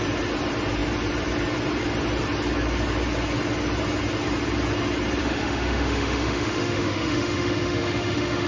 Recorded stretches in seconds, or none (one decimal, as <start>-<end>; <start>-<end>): 0.0-5.2